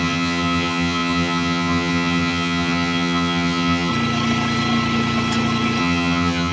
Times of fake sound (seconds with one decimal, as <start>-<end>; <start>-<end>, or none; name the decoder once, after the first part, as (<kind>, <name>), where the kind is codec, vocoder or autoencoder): 0.0-3.9 (vocoder, HiFi-GAN); 5.8-6.5